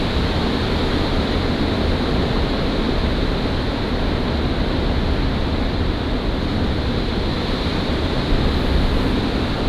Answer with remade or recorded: recorded